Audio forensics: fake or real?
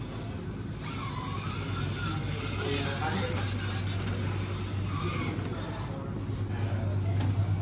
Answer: real